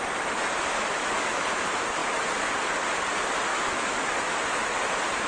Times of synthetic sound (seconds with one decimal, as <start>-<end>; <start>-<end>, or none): 1.0-1.6; 3.5-4.8